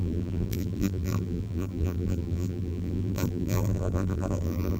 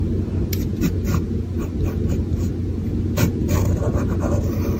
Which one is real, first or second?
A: second